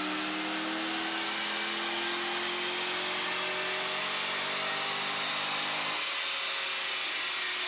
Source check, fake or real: real